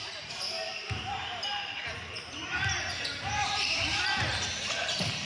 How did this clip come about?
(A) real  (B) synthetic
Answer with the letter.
B